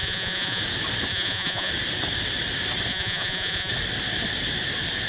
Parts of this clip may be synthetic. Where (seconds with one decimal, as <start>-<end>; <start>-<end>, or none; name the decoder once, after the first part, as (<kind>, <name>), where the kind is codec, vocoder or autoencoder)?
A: 0.0-0.6 (vocoder, Vocos); 1.1-1.7; 2.9-3.7